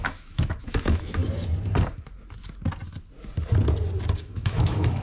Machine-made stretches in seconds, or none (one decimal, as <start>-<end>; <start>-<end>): 0.0-1.2; 4.2-5.0